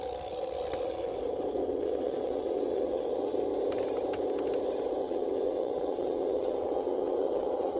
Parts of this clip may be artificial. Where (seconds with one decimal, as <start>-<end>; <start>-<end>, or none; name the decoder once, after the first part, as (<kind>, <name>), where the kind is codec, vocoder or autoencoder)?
1.6-3.4 (vocoder, WaveNeXt); 5.0-7.8